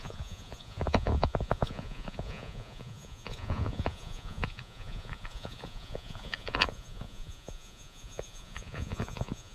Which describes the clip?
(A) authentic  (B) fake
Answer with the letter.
B